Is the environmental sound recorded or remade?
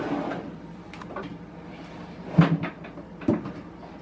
recorded